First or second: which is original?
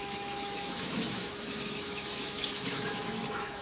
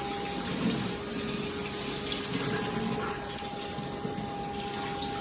second